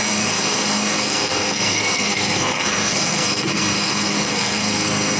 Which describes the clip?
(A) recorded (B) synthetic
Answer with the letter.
B